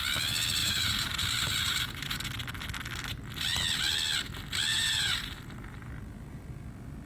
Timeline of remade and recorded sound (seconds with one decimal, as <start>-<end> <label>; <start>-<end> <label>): 0.0-0.6 recorded; 0.6-2.1 remade; 2.1-4.7 recorded; 4.7-5.3 remade; 5.3-7.1 recorded